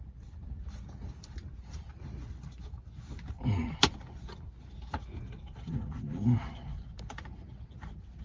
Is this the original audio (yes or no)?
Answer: yes